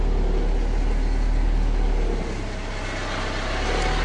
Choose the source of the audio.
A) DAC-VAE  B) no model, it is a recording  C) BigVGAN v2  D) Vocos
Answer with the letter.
B